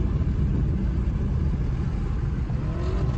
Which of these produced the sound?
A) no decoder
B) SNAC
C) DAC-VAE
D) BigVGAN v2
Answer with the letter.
A